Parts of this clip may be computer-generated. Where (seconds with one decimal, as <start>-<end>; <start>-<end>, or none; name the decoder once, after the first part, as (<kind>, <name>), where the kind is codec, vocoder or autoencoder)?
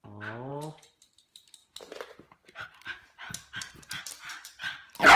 0.5-1.1 (vocoder, BigVGAN v2); 1.6-4.0